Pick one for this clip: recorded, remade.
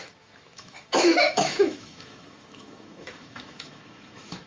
remade